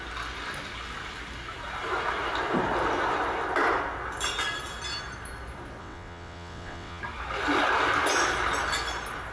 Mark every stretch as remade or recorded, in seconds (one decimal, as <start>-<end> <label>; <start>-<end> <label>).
0.0-5.8 recorded; 5.8-7.0 remade; 7.0-9.3 recorded